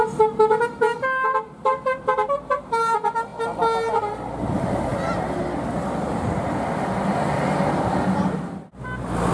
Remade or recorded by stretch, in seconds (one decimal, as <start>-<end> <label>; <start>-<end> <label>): 0.0-9.3 recorded